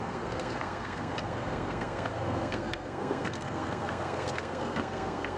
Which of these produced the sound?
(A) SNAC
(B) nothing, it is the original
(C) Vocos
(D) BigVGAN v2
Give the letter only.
A